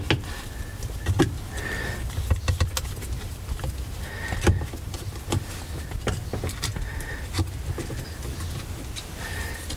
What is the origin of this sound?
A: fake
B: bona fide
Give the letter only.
B